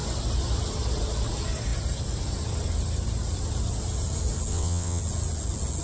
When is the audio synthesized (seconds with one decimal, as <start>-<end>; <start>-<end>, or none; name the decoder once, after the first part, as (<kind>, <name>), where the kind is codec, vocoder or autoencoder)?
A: 4.5-5.0 (vocoder, WaveNeXt)